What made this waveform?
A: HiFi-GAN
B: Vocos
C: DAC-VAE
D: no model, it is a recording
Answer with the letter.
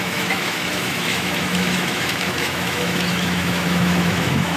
C